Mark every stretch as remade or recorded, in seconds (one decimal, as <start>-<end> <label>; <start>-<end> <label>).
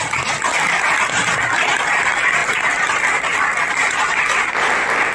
0.0-5.1 recorded